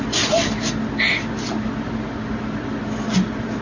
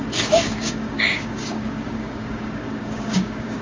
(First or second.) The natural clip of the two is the first